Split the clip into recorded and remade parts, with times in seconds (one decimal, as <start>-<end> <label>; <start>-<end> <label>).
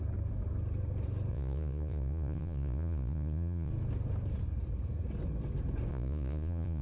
0.0-1.3 recorded; 1.3-3.7 remade; 3.7-5.9 recorded; 5.9-6.8 remade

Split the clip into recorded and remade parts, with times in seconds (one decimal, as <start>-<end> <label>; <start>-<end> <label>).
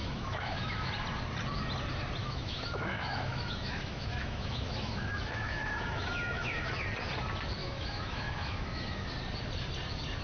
0.0-0.9 remade; 0.9-2.2 recorded; 2.2-6.7 remade; 6.7-7.6 recorded; 7.6-9.1 remade; 9.1-10.2 recorded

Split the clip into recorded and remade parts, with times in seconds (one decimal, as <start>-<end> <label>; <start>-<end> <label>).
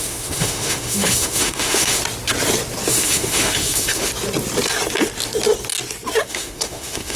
0.0-2.0 remade; 2.0-2.9 recorded; 2.9-4.1 remade; 4.1-6.3 recorded; 6.3-7.2 remade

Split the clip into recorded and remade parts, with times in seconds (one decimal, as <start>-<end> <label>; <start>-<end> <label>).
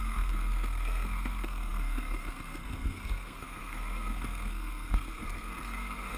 0.0-6.2 remade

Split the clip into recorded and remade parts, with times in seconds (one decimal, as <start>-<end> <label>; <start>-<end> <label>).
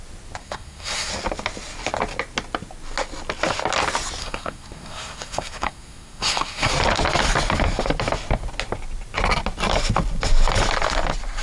0.0-0.4 recorded; 0.4-1.1 remade; 1.1-4.2 recorded; 4.2-6.7 remade; 6.7-11.4 recorded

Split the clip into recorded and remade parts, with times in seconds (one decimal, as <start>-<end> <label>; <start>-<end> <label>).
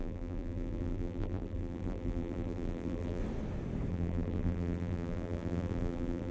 0.0-3.2 remade; 3.2-3.9 recorded; 3.9-6.3 remade